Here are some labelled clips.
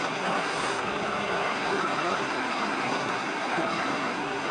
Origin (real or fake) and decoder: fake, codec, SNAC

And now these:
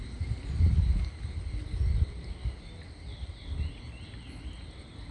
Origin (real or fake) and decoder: real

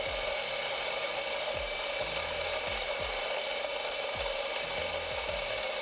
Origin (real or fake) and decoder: real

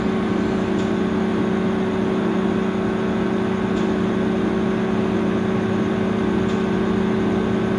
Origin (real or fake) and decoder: real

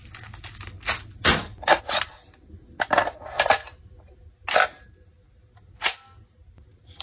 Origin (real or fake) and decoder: real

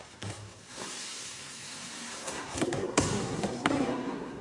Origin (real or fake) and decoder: fake, codec, SNAC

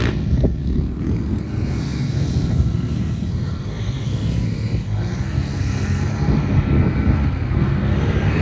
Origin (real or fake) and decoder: fake, codec, SNAC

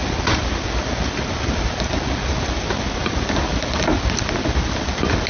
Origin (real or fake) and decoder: real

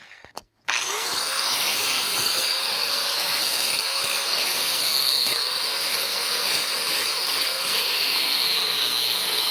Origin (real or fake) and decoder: fake, codec, SNAC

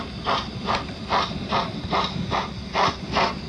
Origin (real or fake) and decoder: real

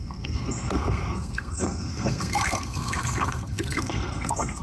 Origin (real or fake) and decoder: fake, codec, SNAC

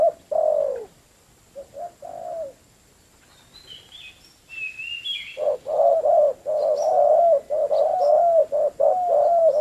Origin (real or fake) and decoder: real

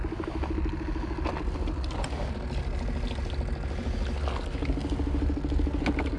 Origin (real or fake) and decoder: real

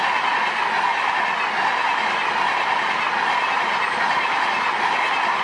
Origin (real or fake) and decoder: real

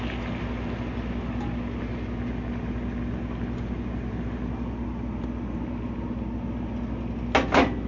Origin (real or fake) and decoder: real